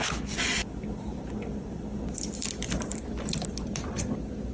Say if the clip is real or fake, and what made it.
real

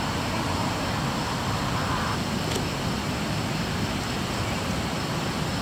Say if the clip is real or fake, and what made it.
real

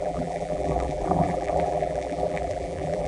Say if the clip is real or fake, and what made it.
fake, vocoder, BigVGAN v2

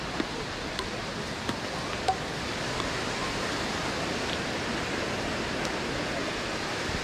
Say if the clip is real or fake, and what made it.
real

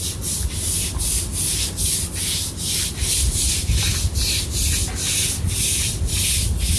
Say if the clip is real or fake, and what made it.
real